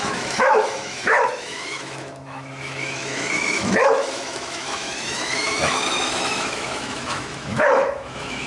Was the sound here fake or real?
fake